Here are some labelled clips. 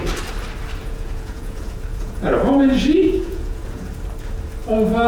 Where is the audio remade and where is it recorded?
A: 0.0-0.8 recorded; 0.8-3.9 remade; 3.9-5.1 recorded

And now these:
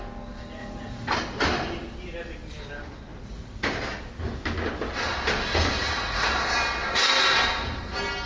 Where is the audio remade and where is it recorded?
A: 0.0-0.6 recorded; 0.6-1.1 remade; 1.1-3.1 recorded; 3.1-3.8 remade; 3.8-5.8 recorded; 5.8-6.3 remade; 6.3-8.3 recorded

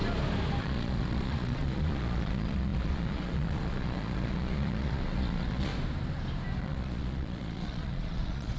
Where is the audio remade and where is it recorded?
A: 0.0-0.6 recorded; 0.6-5.7 remade; 5.7-6.6 recorded; 6.6-8.6 remade

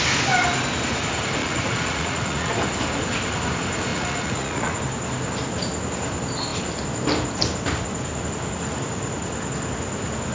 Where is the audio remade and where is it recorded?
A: 0.0-1.4 recorded; 1.4-2.5 remade; 2.5-3.9 recorded; 3.9-4.8 remade; 4.8-10.3 recorded